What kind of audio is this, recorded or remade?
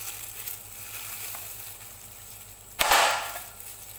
recorded